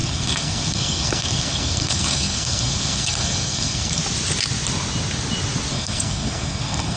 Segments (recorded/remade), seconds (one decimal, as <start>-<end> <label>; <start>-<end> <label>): 0.0-4.0 remade; 4.0-5.7 recorded; 5.7-7.0 remade